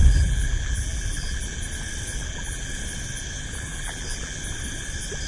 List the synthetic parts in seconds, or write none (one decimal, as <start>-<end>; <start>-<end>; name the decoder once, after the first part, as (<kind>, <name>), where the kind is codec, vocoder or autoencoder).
0.0-1.6 (vocoder, BigVGAN v2); 2.1-2.7; 3.7-4.4